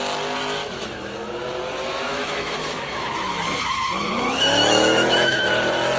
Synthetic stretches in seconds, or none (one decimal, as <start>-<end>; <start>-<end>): 0.6-1.3; 1.9-5.5